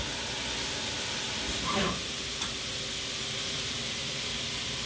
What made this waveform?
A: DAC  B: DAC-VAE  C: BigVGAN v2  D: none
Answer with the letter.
C